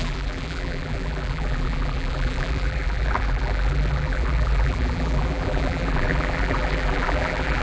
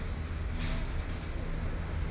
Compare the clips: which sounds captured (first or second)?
second